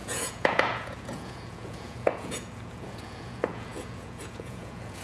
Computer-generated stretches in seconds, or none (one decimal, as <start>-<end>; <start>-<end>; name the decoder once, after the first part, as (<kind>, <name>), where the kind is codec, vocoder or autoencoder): 0.0-5.0 (vocoder, Vocos)